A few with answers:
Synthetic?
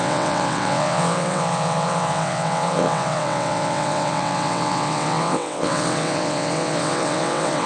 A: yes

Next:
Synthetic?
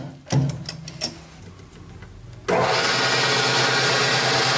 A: no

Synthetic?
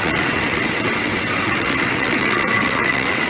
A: yes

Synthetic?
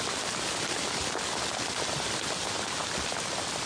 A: no